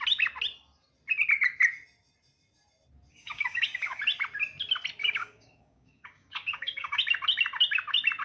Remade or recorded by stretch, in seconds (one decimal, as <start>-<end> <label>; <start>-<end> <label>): 0.0-3.1 recorded; 3.1-4.0 remade; 4.0-5.0 recorded; 5.0-7.0 remade; 7.0-8.2 recorded